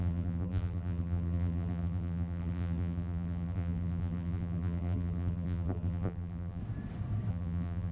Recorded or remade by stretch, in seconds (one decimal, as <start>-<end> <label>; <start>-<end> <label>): 0.0-6.6 remade; 6.6-7.3 recorded; 7.3-7.9 remade